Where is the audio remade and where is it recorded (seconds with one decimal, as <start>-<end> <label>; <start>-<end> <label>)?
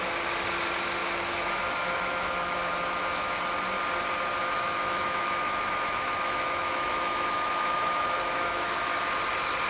0.0-1.0 recorded; 1.0-3.4 remade; 3.4-4.4 recorded; 4.4-9.1 remade; 9.1-9.7 recorded